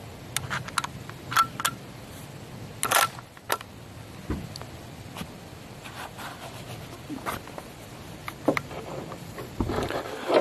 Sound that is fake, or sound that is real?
real